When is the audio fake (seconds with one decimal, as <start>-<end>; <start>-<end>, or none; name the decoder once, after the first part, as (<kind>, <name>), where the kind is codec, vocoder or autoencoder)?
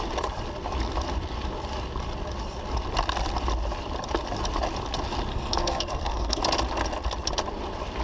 5.3-6.4 (codec, SNAC)